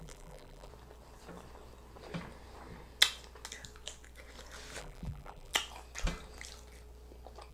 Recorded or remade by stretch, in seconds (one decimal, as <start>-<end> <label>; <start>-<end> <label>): 0.0-0.7 remade; 0.7-4.8 recorded; 4.8-5.5 remade; 5.5-7.5 recorded